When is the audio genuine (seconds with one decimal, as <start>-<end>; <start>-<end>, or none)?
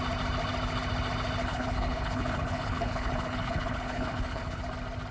0.0-1.5; 4.6-5.1